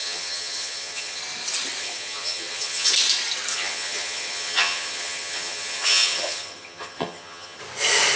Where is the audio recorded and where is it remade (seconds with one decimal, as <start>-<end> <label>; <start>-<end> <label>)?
0.0-1.2 remade; 1.2-1.8 recorded; 1.8-2.9 remade; 2.9-3.5 recorded; 3.5-7.6 remade; 7.6-8.2 recorded